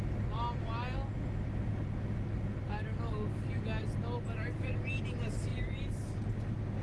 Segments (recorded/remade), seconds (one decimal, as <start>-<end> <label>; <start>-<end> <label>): 0.0-6.8 recorded